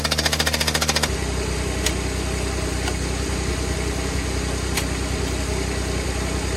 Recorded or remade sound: recorded